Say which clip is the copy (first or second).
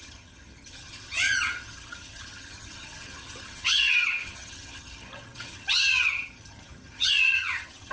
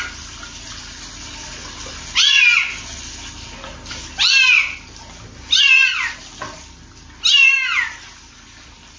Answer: first